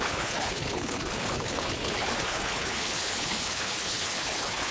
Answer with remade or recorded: remade